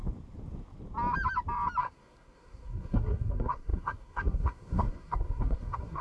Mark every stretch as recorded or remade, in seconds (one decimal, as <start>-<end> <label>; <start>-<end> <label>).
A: 0.0-1.8 recorded; 1.8-6.0 remade